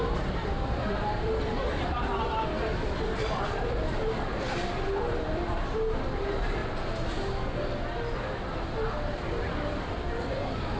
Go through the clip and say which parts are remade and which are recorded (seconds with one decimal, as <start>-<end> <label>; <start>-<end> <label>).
0.0-6.6 remade; 6.6-8.6 recorded; 8.6-10.8 remade